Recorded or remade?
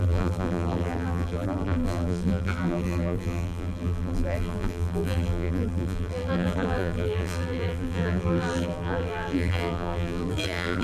remade